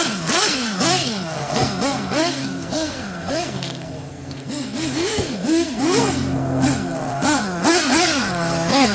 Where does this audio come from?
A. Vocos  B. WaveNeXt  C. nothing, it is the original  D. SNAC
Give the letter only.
D